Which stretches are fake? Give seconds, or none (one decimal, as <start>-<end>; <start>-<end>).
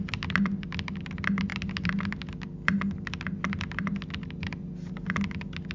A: none